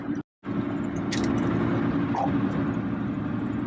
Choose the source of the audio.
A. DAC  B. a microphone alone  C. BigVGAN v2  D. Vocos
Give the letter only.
B